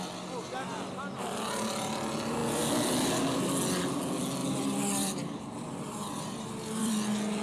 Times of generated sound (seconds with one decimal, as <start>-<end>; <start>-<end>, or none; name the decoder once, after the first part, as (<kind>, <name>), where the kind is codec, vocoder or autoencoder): 2.4-3.2 (vocoder, BigVGAN v2); 4.4-6.9